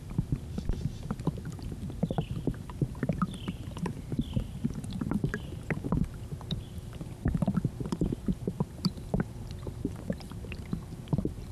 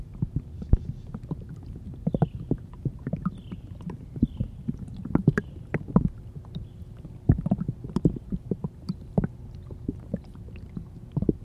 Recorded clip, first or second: second